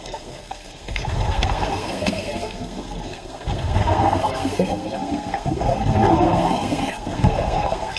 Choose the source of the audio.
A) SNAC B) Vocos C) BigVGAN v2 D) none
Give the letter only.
A